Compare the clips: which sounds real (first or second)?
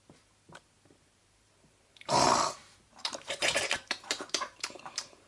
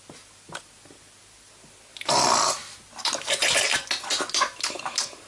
second